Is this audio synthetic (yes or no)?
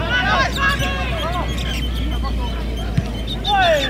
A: no